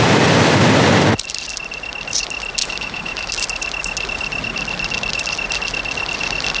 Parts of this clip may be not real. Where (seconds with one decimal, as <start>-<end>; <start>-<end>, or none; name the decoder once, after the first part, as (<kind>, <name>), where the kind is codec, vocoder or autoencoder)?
2.6-3.3 (autoencoder, DAC-VAE)